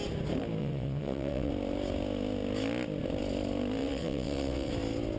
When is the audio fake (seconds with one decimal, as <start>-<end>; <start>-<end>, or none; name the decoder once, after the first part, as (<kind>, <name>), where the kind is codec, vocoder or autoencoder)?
0.6-1.5 (vocoder, WaveNeXt); 3.8-4.7